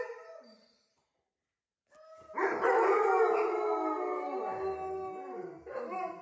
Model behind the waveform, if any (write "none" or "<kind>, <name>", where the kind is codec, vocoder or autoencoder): none